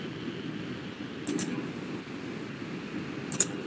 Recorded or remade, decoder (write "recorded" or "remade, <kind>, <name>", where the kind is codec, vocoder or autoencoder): recorded